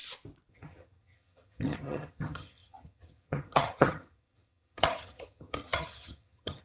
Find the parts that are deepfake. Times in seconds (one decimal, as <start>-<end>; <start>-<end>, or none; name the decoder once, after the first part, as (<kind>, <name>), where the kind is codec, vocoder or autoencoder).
0.5-6.6 (vocoder, HiFi-GAN)